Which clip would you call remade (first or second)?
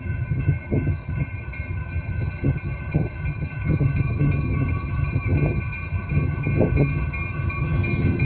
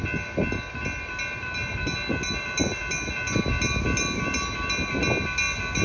first